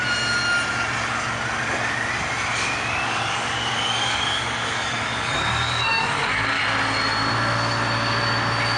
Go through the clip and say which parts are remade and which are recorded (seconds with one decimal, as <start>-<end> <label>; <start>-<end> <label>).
0.0-2.5 recorded; 2.5-6.6 remade; 6.6-8.8 recorded